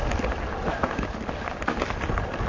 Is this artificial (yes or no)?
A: no